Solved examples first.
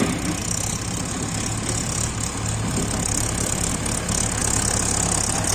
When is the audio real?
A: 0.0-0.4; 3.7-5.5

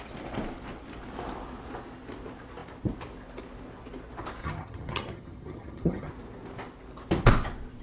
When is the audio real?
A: 0.0-4.4; 6.1-7.8

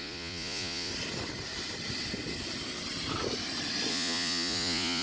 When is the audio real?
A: 0.9-3.9

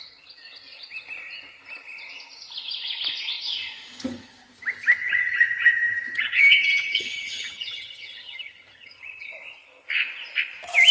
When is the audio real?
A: 0.0-5.0; 9.3-10.9

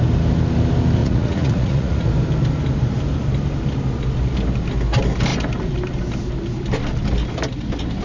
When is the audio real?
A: 0.0-1.0; 2.1-8.0